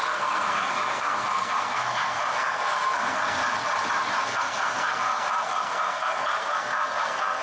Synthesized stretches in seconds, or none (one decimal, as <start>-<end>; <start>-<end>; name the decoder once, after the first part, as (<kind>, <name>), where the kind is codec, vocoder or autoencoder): 0.0-3.4 (codec, SNAC); 4.2-7.4